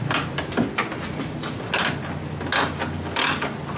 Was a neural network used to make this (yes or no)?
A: no